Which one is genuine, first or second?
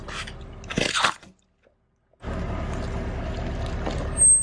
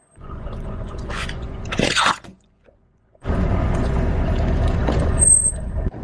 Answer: first